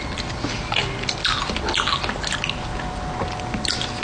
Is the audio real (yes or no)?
yes